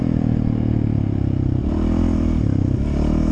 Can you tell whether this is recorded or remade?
recorded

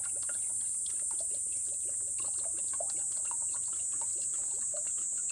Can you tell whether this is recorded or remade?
recorded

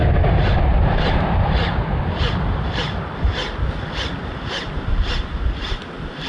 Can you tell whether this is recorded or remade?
recorded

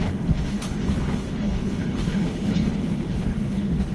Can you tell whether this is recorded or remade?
remade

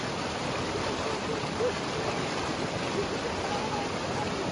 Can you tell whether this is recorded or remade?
recorded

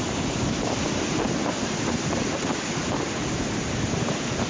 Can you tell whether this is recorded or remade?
recorded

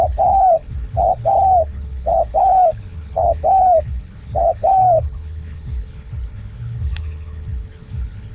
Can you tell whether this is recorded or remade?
remade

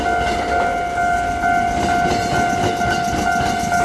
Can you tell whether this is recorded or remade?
recorded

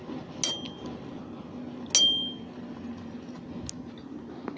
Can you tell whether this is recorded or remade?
recorded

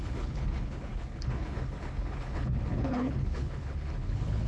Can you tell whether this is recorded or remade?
remade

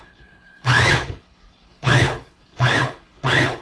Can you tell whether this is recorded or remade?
remade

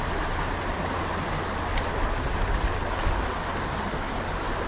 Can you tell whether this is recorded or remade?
recorded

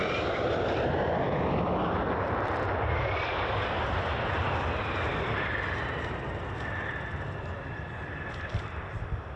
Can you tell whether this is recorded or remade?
recorded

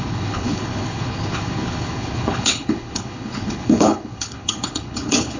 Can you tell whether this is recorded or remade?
remade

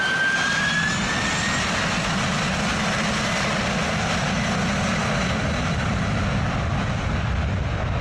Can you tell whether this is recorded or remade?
recorded